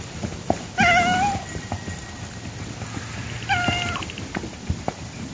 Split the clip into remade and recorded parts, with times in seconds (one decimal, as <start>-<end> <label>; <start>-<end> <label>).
0.0-5.3 recorded